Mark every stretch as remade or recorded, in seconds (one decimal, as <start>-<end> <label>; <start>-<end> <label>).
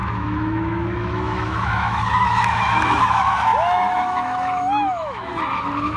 0.0-5.3 remade; 5.3-6.0 recorded